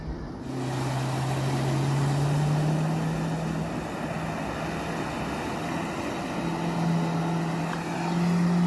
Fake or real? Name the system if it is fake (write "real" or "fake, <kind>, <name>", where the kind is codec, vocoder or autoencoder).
real